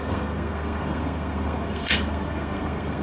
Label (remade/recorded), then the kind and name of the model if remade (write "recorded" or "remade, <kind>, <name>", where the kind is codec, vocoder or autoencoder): remade, codec, SNAC